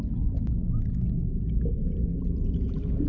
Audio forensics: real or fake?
real